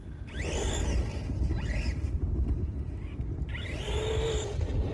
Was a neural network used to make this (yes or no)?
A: no